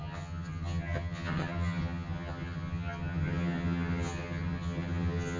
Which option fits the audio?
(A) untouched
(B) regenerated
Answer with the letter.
B